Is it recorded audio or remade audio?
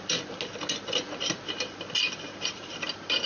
recorded